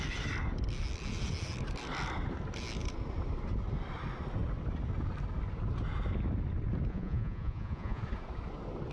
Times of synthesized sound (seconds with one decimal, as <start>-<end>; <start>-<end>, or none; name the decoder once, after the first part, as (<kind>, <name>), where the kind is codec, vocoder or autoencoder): 6.9-8.0 (vocoder, Vocos)